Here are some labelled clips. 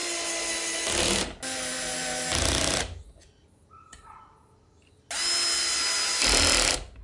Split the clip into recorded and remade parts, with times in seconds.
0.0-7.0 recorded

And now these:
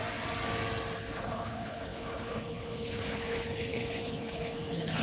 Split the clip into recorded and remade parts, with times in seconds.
0.0-1.1 recorded; 1.1-5.0 remade

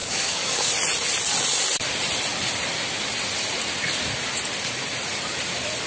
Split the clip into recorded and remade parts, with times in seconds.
0.0-0.7 remade; 0.7-5.9 recorded

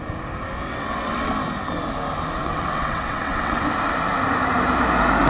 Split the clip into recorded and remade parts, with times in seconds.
0.0-0.7 recorded; 0.7-1.3 remade; 1.3-2.4 recorded; 2.4-3.6 remade; 3.6-5.3 recorded

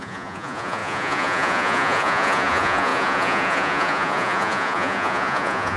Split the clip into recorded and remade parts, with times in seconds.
0.0-5.8 remade

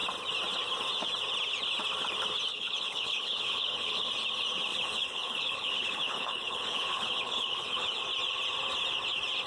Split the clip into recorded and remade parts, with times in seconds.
0.0-2.5 recorded; 2.5-4.1 remade; 4.1-4.7 recorded; 4.7-8.0 remade; 8.0-9.5 recorded

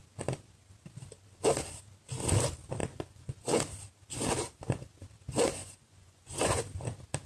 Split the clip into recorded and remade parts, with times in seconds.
0.0-2.8 recorded; 2.8-3.6 remade; 3.6-5.6 recorded; 5.6-6.6 remade; 6.6-7.3 recorded

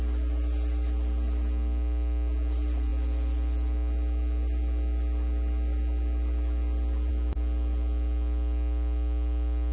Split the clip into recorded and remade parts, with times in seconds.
0.0-9.7 recorded